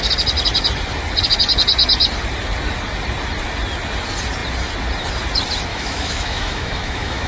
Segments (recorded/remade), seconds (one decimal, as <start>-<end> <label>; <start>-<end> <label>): 0.0-5.7 recorded; 5.7-7.3 remade